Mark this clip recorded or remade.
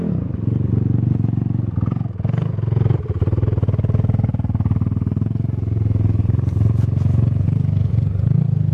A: recorded